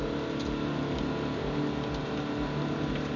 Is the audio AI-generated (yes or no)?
no